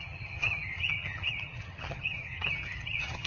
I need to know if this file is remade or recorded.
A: remade